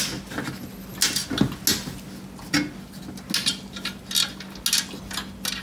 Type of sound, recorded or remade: recorded